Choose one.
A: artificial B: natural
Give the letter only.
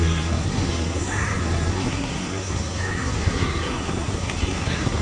A